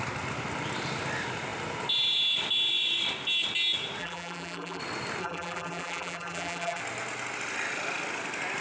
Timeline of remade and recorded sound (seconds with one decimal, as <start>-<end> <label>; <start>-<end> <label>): 0.0-4.0 recorded; 4.0-4.8 remade; 4.8-5.2 recorded; 5.2-6.8 remade; 6.8-8.6 recorded